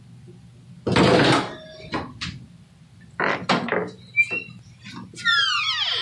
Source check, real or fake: real